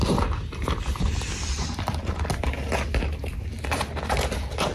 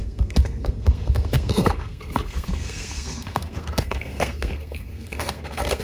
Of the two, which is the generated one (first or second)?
second